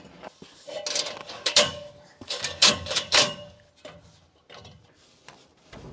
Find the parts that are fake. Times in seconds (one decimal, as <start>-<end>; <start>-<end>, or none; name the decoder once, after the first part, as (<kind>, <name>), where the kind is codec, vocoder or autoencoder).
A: 1.2-3.7 (codec, DAC)